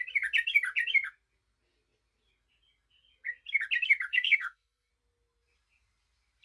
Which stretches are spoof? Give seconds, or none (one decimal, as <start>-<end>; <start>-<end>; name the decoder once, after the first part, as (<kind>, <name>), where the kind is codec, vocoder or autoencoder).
4.1-4.9 (codec, SNAC)